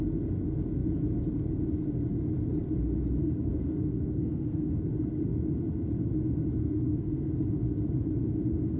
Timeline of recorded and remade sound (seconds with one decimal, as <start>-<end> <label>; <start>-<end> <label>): 0.0-3.2 recorded; 3.2-4.7 remade; 4.7-6.6 recorded; 6.6-7.3 remade; 7.3-8.8 recorded